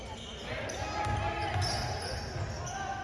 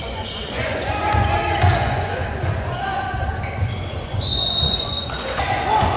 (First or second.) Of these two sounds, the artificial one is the second